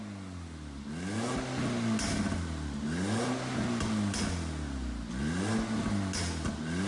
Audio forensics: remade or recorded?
recorded